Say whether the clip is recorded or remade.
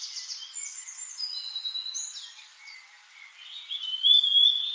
recorded